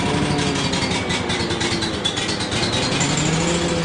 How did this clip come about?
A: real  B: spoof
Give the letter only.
A